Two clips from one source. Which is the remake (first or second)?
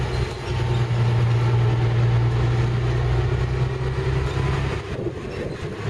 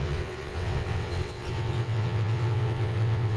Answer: second